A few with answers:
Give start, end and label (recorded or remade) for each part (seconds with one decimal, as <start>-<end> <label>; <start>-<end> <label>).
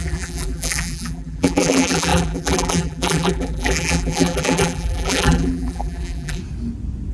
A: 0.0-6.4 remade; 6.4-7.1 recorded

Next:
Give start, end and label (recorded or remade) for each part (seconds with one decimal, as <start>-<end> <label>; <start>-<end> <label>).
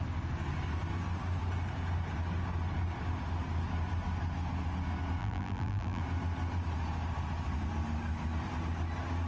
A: 0.0-5.2 recorded; 5.2-6.0 remade; 6.0-9.3 recorded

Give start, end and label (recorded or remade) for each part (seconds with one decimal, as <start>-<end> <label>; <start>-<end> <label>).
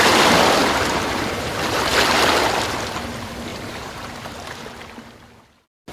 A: 0.0-0.6 recorded; 0.6-1.5 remade; 1.5-3.5 recorded; 3.5-4.2 remade; 4.2-5.9 recorded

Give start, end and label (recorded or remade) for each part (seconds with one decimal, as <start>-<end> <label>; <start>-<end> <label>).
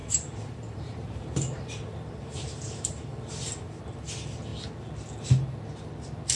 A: 0.0-3.8 remade; 3.8-6.4 recorded